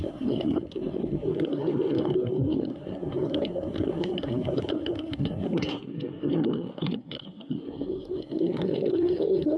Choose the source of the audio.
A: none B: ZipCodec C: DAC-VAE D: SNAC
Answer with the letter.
D